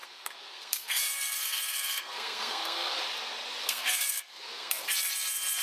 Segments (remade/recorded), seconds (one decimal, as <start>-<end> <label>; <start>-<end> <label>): 0.0-3.0 remade; 3.0-3.6 recorded; 3.6-4.9 remade; 4.9-5.6 recorded